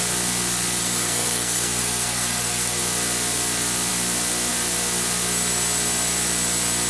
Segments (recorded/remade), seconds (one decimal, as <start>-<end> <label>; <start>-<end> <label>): 0.0-0.8 recorded; 0.8-2.8 remade; 2.8-6.9 recorded